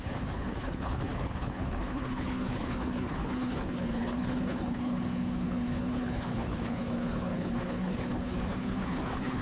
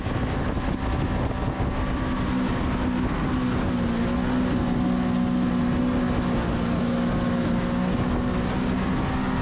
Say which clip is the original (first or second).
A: second